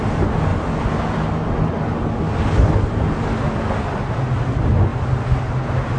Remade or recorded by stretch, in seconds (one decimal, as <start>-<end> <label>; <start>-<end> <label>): 0.0-0.5 remade; 0.5-4.1 recorded; 4.1-6.0 remade